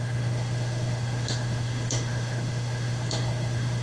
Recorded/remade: remade